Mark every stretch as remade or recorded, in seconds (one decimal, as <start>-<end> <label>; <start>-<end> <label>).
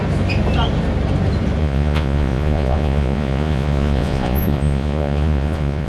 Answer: 0.0-1.6 recorded; 1.6-5.9 remade